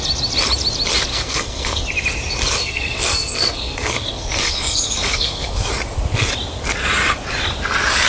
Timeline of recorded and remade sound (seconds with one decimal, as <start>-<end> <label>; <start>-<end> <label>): 0.0-1.1 recorded; 1.1-1.8 remade; 1.8-2.6 recorded; 2.6-5.7 remade; 5.7-8.1 recorded